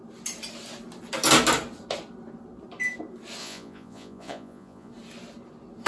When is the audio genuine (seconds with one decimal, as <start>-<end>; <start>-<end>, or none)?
0.0-3.4; 4.9-5.9